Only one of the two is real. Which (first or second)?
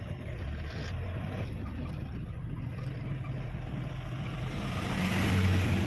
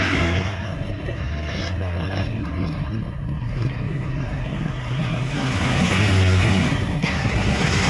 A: first